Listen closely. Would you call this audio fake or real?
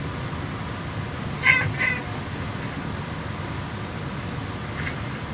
real